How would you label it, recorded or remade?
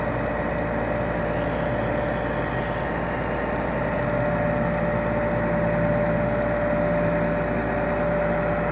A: recorded